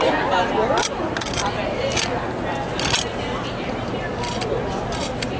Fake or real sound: real